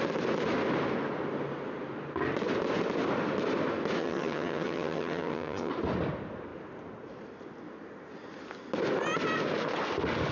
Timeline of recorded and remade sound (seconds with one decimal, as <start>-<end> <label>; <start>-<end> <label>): 0.0-4.0 recorded; 4.0-5.7 remade; 5.7-10.3 recorded